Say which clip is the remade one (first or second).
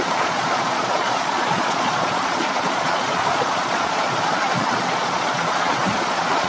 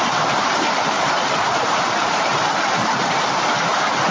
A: first